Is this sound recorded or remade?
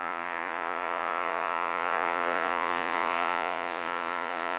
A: remade